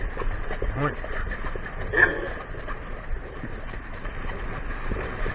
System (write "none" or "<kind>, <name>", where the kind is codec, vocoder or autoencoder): none